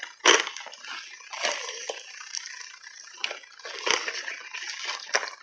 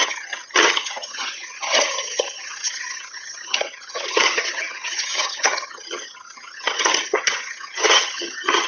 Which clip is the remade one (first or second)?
second